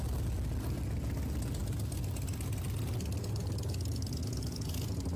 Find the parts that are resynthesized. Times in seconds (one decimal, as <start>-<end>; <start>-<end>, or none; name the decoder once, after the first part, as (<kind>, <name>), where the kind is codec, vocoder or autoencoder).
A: none